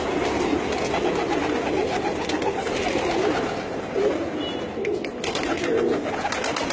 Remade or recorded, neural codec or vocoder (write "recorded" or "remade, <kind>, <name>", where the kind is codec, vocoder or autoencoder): recorded